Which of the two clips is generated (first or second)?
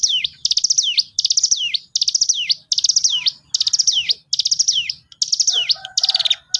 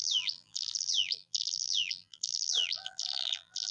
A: second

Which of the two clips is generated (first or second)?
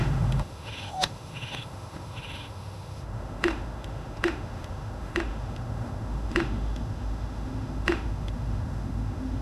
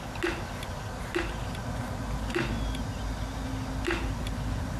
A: first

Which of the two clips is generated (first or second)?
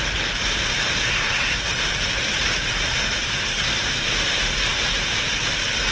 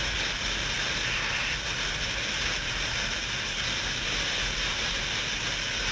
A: first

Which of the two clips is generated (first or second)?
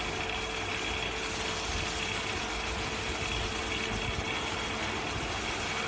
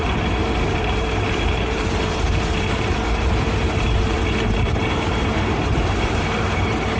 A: second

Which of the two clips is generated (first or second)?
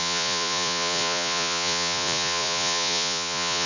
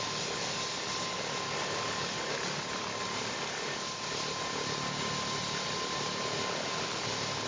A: first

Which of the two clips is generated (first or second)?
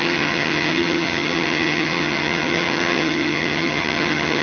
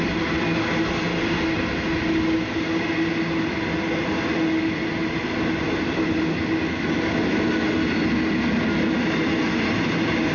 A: first